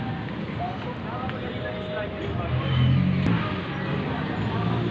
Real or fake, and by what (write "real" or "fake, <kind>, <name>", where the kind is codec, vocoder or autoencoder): real